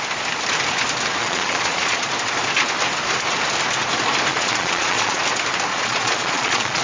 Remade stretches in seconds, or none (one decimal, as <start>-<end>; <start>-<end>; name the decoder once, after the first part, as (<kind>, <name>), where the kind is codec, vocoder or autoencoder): 1.2-2.1 (vocoder, Vocos); 4.3-5.2; 5.7-6.8

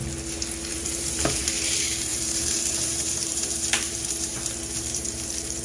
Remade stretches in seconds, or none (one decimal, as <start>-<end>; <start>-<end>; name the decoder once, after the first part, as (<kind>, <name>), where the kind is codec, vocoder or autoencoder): 0.7-5.6 (vocoder, BigVGAN v2)

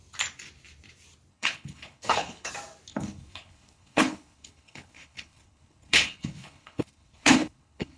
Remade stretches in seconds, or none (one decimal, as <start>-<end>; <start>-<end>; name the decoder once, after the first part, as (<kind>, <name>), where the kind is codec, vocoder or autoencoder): 1.3-2.5 (codec, HILCodec); 2.9-8.0

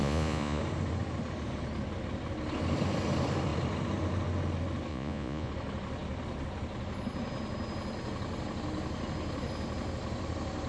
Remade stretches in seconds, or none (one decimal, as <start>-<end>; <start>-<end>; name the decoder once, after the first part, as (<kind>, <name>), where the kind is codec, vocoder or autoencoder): 0.0-0.6 (vocoder, Vocos); 4.9-5.5